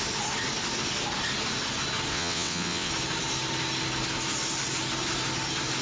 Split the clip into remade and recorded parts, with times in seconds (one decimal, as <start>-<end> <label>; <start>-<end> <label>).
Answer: 0.0-2.1 recorded; 2.1-2.9 remade; 2.9-5.8 recorded